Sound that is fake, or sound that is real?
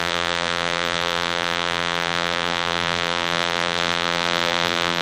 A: fake